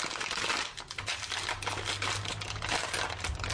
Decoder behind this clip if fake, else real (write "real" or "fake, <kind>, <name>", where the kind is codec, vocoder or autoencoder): real